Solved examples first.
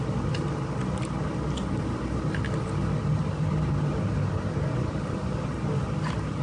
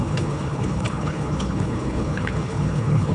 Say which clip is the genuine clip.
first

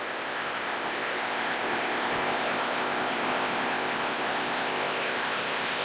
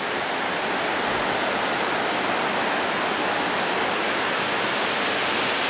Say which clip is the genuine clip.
second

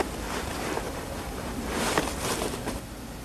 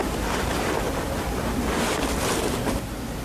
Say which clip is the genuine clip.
second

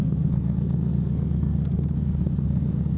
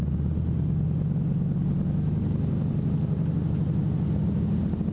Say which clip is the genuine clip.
second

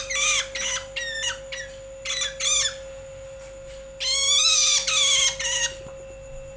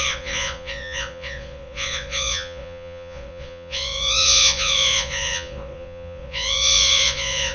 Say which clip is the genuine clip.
first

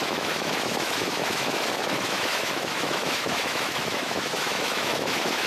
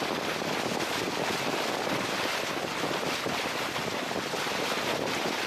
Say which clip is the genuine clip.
second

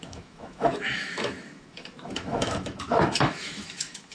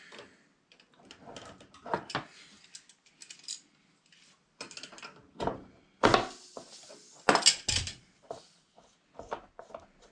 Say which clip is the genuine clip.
second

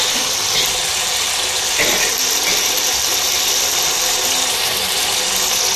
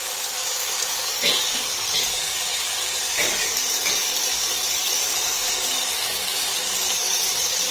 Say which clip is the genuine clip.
first